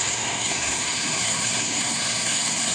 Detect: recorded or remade remade